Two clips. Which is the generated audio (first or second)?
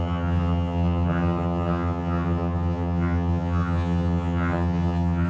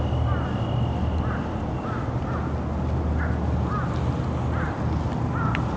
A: first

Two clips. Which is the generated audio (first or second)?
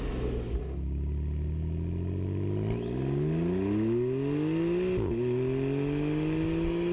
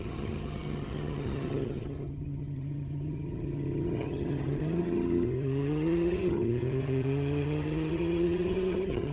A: second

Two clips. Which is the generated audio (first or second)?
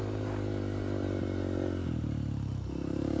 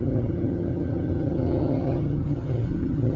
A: second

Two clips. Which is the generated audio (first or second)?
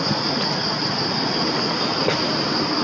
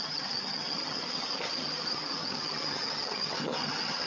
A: second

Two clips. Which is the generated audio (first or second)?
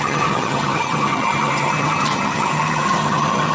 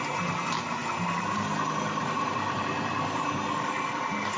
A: first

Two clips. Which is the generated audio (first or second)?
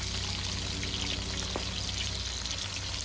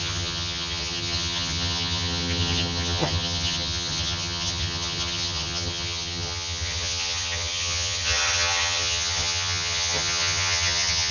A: second